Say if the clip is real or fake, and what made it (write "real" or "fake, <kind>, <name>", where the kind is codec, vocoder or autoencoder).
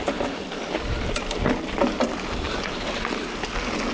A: real